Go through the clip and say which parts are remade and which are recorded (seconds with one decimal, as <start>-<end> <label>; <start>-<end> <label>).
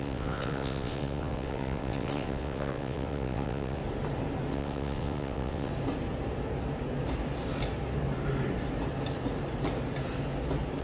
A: 0.0-3.8 remade; 3.8-4.5 recorded; 4.5-5.7 remade; 5.7-10.8 recorded